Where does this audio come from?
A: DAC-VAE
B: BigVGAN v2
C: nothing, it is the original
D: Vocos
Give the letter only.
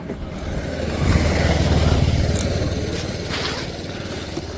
C